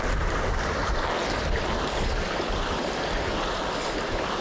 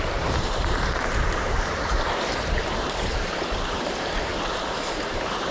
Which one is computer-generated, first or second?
second